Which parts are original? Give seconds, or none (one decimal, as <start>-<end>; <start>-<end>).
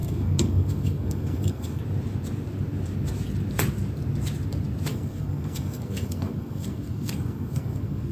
1.8-4.9